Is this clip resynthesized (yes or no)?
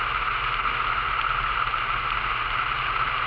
no